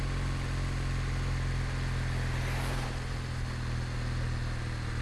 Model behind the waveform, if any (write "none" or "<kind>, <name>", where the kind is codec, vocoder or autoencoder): none